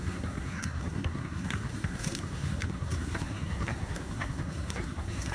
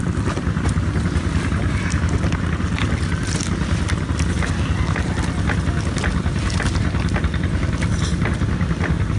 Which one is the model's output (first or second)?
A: first